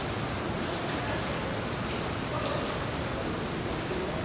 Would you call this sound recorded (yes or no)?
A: no